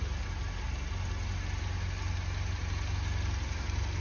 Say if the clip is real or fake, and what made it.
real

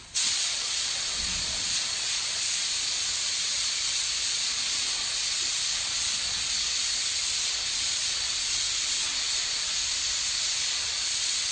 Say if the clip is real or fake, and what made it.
fake, vocoder, Vocos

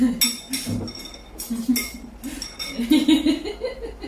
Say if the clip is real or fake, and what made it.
real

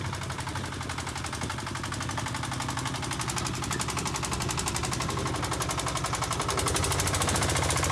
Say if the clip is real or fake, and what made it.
real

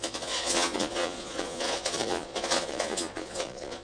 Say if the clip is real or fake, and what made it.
fake, vocoder, Vocos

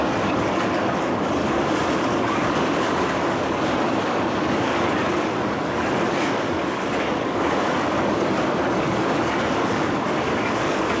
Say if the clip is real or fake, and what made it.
fake, codec, DAC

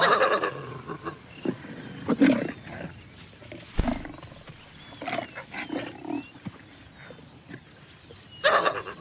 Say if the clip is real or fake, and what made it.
real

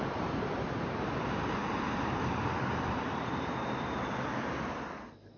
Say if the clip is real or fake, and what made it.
real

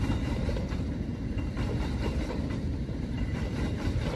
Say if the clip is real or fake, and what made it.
fake, vocoder, BigVGAN v2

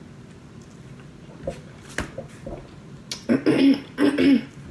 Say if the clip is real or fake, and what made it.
real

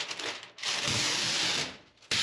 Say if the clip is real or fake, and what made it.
real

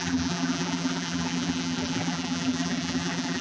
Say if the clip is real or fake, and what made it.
fake, vocoder, BigVGAN v2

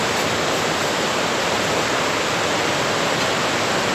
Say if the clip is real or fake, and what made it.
real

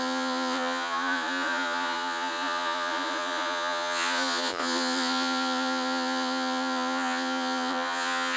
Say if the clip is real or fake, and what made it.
fake, vocoder, Vocos